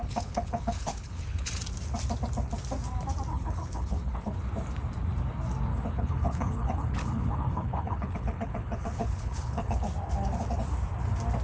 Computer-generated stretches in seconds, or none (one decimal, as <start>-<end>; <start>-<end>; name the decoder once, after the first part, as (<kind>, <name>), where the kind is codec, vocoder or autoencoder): 0.0-1.5 (codec, HILCodec); 3.3-4.4; 5.7-9.8